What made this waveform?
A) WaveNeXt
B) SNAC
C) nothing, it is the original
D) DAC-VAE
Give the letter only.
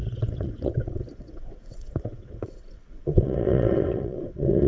A